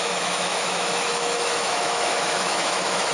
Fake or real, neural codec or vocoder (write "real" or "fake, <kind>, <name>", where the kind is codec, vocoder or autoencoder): fake, autoencoder, DAC-VAE